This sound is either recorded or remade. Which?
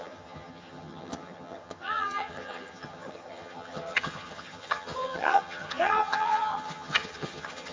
remade